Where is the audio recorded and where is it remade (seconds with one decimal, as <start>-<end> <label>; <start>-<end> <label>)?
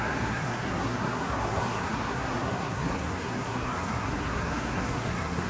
0.0-5.5 remade